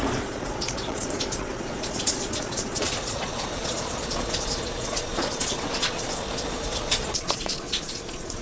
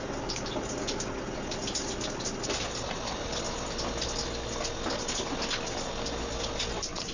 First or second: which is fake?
first